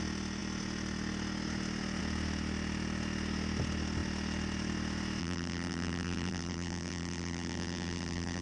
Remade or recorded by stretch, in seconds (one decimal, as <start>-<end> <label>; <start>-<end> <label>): 0.0-5.2 recorded; 5.2-8.4 remade